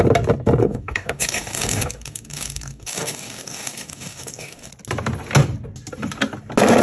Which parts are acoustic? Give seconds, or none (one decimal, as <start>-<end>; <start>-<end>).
0.0-0.6; 4.7-6.8